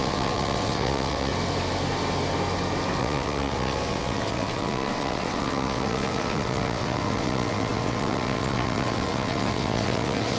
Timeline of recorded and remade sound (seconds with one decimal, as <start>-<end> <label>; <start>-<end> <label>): 0.0-1.3 remade; 1.3-3.0 recorded; 3.0-10.4 remade